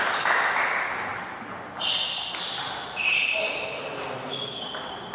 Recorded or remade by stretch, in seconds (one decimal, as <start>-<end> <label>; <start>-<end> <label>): 0.0-5.1 recorded